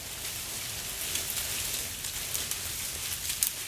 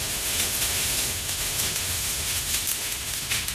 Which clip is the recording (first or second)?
first